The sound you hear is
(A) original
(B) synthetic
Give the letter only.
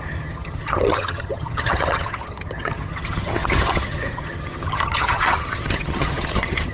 B